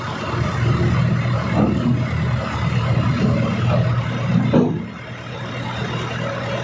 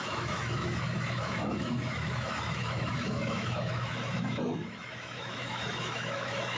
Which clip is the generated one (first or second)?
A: second